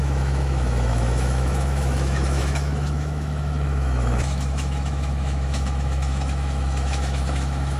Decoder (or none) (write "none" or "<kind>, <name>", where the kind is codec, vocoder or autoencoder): autoencoder, DAC-VAE